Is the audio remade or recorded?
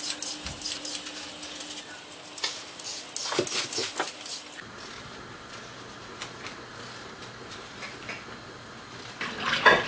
recorded